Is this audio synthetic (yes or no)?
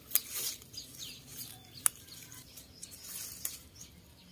no